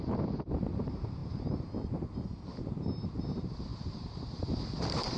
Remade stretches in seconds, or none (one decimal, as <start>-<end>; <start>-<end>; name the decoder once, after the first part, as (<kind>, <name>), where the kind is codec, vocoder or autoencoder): 0.0-5.2 (vocoder, BigVGAN v2)